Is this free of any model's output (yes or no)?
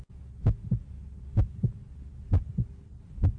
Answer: yes